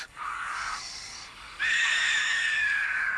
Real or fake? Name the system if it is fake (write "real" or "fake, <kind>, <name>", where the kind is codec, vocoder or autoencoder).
fake, codec, DAC